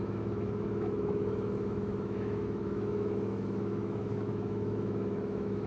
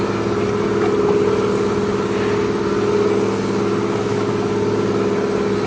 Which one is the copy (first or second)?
first